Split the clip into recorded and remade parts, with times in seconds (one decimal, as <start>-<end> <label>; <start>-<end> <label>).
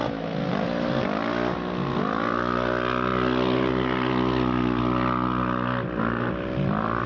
0.0-7.1 recorded